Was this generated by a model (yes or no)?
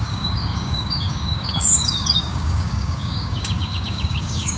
yes